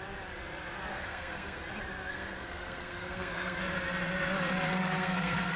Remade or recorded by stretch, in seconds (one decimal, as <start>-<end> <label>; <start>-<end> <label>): 0.0-0.9 recorded; 0.9-1.6 remade; 1.6-2.1 recorded; 2.1-3.6 remade; 3.6-4.8 recorded; 4.8-5.6 remade

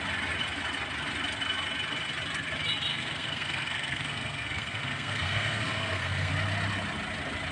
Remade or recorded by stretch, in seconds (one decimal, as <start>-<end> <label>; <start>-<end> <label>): 0.0-2.9 recorded; 2.9-6.3 remade; 6.3-7.5 recorded

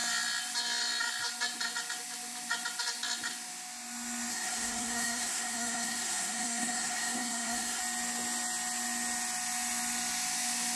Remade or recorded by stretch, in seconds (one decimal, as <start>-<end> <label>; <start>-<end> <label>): 0.0-4.3 recorded; 4.3-7.8 remade; 7.8-10.8 recorded

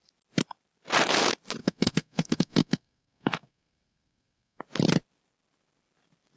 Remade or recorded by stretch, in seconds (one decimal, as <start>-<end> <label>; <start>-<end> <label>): 0.0-1.6 recorded; 1.6-4.6 remade; 4.6-6.4 recorded

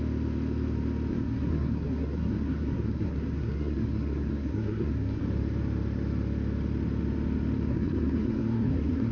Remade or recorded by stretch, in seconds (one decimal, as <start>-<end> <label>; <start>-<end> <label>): 0.0-1.1 recorded; 1.1-5.2 remade; 5.2-7.7 recorded; 7.7-9.1 remade